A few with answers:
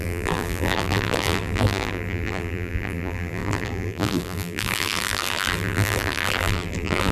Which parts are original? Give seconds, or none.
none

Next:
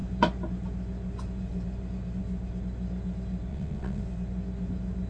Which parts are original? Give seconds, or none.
0.0-3.5; 4.0-5.1